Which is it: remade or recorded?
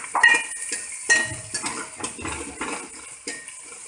recorded